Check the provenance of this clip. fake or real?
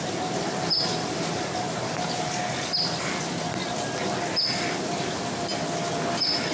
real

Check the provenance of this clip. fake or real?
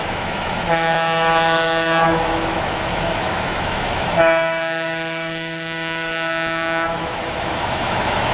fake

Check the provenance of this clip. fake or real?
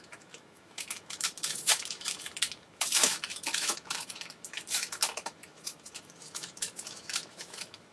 fake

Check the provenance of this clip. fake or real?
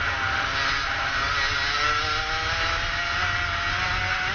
real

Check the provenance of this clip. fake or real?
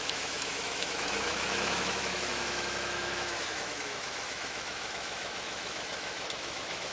fake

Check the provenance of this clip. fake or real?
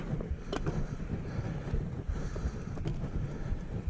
real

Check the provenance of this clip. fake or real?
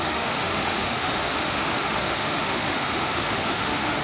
fake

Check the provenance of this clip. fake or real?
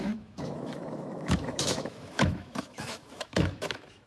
fake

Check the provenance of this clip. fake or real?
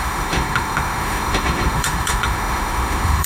fake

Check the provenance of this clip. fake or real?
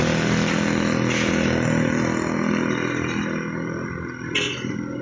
real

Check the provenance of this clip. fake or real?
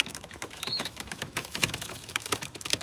fake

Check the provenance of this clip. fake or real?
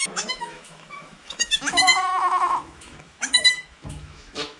fake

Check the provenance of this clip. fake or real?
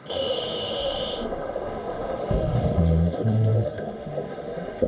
fake